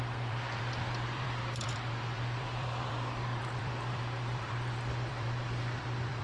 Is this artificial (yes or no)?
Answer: yes